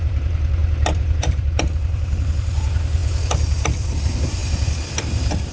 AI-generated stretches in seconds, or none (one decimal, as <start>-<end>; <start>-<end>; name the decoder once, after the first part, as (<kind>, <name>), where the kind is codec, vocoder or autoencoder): 0.0-3.0 (vocoder, BigVGAN v2); 4.0-4.4; 4.9-5.5